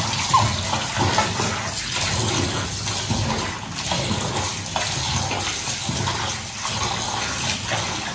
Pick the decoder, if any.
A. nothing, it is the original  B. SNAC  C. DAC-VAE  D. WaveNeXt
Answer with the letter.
A